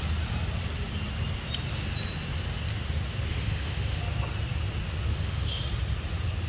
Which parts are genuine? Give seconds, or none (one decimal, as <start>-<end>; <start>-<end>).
0.0-3.3; 4.0-5.1; 5.6-6.5